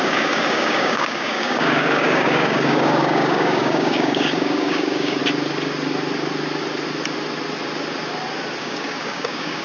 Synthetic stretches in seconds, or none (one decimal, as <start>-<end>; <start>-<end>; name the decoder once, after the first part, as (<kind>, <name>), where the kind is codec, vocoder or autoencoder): 0.0-5.2 (codec, DAC); 8.6-9.6